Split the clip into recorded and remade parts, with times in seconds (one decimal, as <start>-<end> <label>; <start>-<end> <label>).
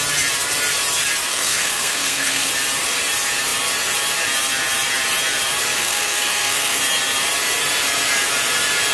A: 0.0-1.3 recorded; 1.3-2.5 remade; 2.5-5.8 recorded; 5.8-6.8 remade; 6.8-8.9 recorded